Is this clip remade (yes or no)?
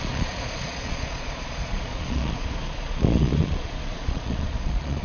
yes